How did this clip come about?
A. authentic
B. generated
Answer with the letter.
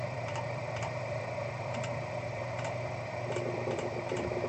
B